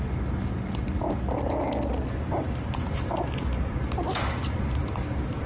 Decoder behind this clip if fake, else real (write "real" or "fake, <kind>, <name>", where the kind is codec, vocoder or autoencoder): real